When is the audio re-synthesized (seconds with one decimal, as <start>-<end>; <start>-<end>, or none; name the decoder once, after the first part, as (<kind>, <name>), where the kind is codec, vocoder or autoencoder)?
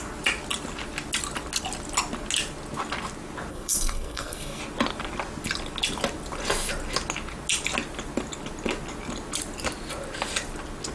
3.5-4.6 (codec, SNAC)